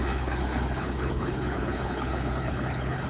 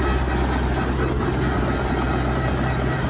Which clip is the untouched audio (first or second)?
second